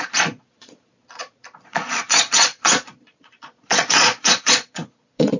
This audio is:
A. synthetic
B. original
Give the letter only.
A